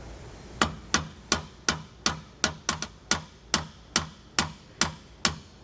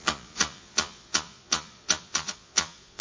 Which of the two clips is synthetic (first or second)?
second